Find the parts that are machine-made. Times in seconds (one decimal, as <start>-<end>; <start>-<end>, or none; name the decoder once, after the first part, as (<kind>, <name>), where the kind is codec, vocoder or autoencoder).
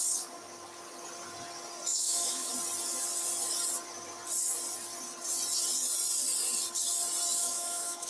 1.9-2.5 (autoencoder, DAC-VAE); 7.4-8.1